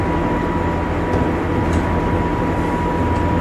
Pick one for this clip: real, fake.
real